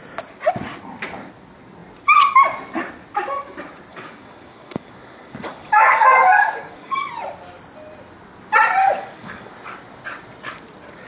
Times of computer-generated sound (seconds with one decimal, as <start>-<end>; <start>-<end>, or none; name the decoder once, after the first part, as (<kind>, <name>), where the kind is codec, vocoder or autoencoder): 3.9-7.1 (codec, DAC); 8.8-9.5